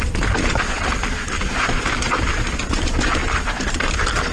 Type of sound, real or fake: real